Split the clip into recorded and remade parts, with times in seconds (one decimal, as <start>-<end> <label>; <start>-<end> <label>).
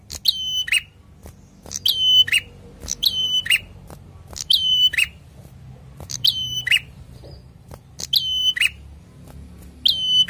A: 0.0-3.0 recorded; 3.0-8.0 remade; 8.0-10.3 recorded